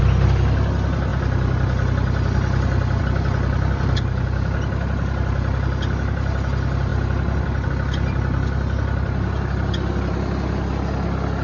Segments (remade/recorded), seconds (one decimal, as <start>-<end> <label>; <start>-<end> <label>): 0.0-11.4 recorded